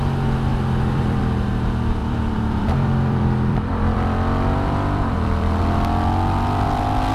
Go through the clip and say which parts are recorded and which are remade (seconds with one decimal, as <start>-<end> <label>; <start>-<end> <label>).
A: 0.0-0.5 recorded; 0.5-1.2 remade; 1.2-2.0 recorded; 2.0-5.6 remade; 5.6-7.1 recorded